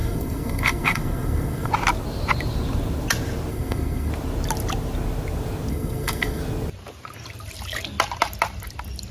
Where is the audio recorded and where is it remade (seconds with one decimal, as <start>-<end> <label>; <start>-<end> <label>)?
0.0-1.7 remade; 1.7-3.5 recorded; 3.5-4.1 remade; 4.1-5.7 recorded; 5.7-6.4 remade; 6.4-9.1 recorded